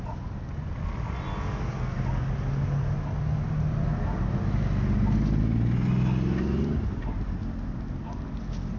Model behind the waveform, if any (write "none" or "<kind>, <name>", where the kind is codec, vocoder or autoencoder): none